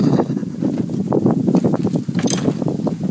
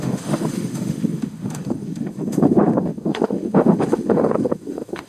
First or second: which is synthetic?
second